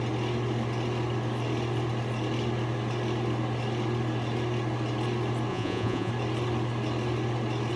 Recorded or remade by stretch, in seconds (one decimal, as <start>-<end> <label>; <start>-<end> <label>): 0.0-5.5 recorded; 5.5-6.1 remade; 6.1-7.8 recorded